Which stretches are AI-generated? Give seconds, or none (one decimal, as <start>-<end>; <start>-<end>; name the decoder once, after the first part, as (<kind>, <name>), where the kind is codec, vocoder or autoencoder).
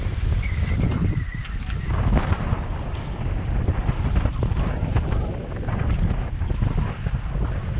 none